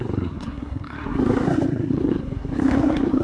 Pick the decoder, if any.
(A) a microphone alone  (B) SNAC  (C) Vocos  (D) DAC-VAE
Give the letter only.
B